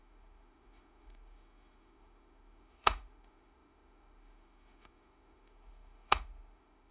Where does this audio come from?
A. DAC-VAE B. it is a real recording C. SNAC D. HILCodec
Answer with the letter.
A